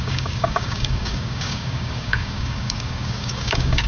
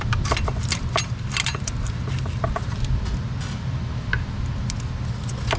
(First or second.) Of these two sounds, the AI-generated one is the first